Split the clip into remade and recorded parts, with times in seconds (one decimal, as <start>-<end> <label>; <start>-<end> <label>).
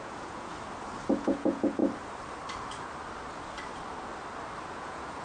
0.0-0.5 remade; 0.5-1.1 recorded; 1.1-1.8 remade; 1.8-4.7 recorded; 4.7-5.2 remade